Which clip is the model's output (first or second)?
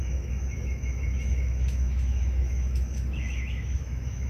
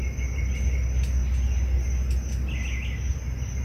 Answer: first